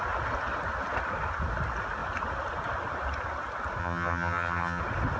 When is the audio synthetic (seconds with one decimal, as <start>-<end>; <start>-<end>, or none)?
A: 3.8-4.8